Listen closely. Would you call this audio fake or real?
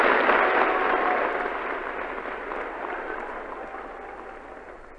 real